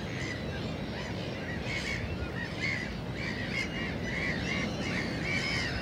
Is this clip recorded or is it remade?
recorded